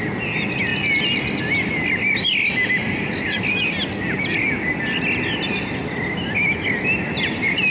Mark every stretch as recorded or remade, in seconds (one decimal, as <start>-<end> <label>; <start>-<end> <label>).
0.0-7.7 recorded